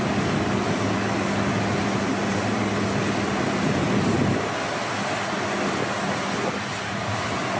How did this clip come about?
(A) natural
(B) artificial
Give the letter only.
A